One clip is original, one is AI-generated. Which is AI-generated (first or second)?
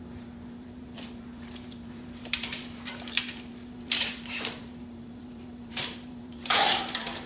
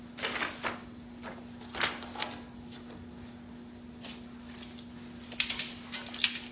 first